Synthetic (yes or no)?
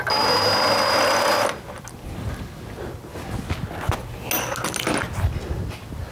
no